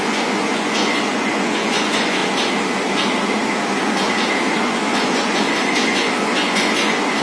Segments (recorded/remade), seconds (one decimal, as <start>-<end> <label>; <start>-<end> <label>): 0.0-2.2 remade; 2.2-4.5 recorded; 4.5-7.2 remade